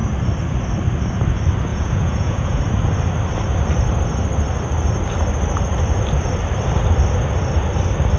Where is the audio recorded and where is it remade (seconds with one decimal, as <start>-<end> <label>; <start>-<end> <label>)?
0.0-1.7 recorded; 1.7-2.6 remade; 2.6-8.2 recorded